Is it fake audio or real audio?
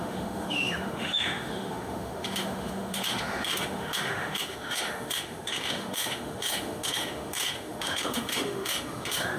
fake